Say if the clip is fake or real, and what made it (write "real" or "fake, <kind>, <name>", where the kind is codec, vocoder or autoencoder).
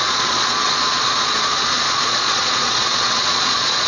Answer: fake, vocoder, Vocos